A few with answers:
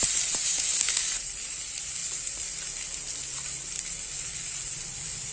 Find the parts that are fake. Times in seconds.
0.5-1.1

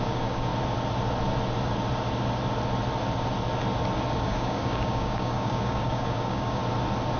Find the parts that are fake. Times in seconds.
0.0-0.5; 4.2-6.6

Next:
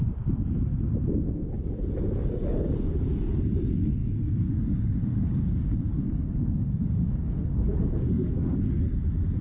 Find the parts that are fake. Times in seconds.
2.2-3.1; 4.0-8.6

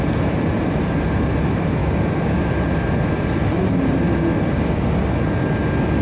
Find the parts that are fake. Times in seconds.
1.8-2.5

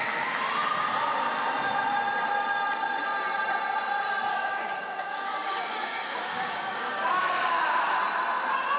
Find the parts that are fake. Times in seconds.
4.3-8.0

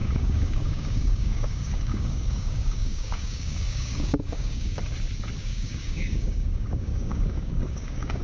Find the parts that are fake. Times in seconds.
0.0-4.8; 5.4-8.2

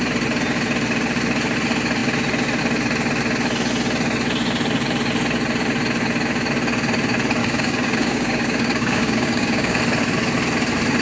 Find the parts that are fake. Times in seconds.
7.4-9.8